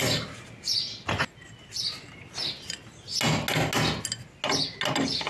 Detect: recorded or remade recorded